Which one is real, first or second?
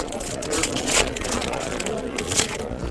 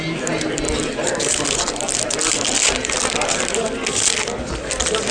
second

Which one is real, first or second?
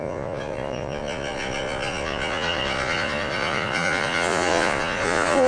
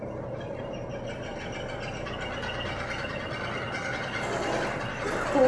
second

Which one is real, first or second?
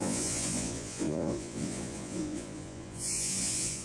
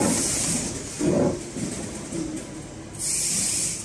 second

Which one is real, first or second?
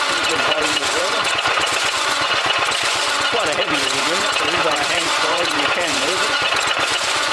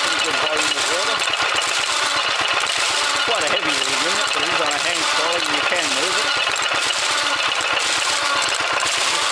second